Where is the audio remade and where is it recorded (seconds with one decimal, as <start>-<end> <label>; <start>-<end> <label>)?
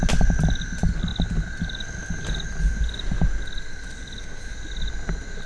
0.0-5.5 recorded